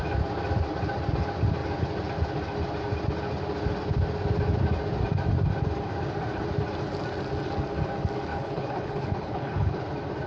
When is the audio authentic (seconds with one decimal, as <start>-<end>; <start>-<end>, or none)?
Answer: 0.0-8.3; 9.9-10.3